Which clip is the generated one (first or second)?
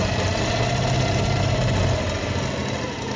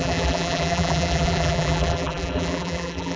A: second